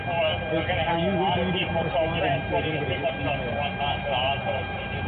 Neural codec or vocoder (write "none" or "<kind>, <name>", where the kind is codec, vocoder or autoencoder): none